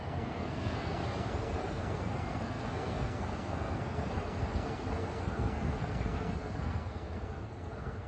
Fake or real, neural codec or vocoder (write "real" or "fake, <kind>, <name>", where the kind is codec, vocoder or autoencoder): fake, codec, SNAC